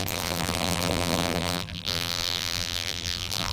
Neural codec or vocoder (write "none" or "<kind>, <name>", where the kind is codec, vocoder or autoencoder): vocoder, BigVGAN v2